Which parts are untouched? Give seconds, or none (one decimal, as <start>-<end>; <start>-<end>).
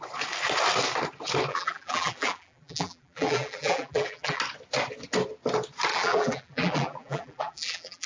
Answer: 0.0-1.5; 4.4-5.9